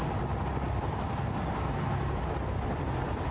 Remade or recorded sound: recorded